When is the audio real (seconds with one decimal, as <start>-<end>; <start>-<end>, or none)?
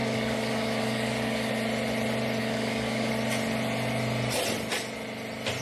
1.5-2.4; 3.1-5.6